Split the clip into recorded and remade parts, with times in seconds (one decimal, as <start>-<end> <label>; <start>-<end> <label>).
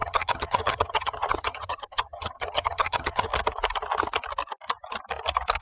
0.0-3.3 remade; 3.3-5.6 recorded